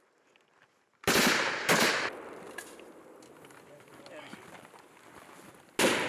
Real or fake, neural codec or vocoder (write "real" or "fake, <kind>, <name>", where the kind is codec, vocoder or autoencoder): real